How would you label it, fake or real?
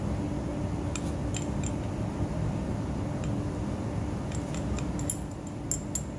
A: real